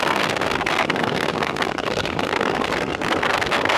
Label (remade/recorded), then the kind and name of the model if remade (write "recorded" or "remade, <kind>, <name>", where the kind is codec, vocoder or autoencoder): remade, codec, SNAC